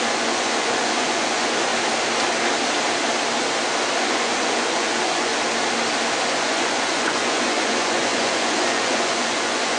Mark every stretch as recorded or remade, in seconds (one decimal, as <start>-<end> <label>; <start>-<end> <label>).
0.0-1.7 remade; 1.7-4.0 recorded; 4.0-5.3 remade; 5.3-6.2 recorded; 6.2-9.8 remade